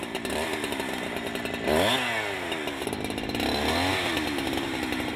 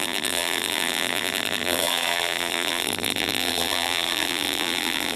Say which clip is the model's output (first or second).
second